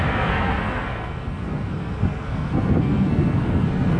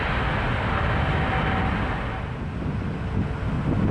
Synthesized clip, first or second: first